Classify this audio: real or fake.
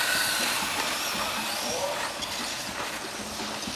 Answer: fake